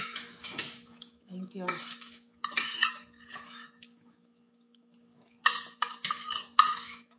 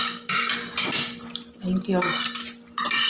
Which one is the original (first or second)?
second